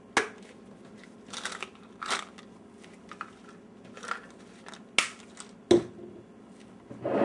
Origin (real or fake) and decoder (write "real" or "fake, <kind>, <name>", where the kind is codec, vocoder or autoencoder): real